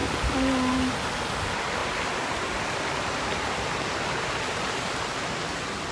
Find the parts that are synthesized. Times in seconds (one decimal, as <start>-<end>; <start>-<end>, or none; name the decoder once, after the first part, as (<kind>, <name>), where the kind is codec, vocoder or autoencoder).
none